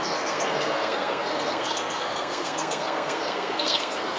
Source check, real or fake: fake